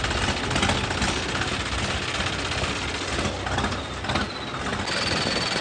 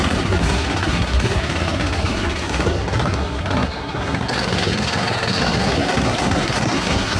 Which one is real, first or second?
first